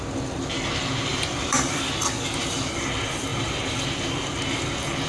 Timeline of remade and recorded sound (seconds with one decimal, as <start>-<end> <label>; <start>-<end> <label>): 0.0-1.1 recorded; 1.1-2.0 remade; 2.0-5.1 recorded